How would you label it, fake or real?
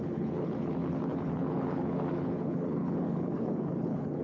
fake